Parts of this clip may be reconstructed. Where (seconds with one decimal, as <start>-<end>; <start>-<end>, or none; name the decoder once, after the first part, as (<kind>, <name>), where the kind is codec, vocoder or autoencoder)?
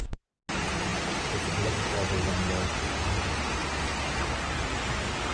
none